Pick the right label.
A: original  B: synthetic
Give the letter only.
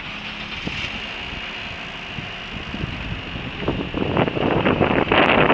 A